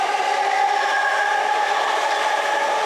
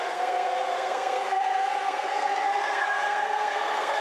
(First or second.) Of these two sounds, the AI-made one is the second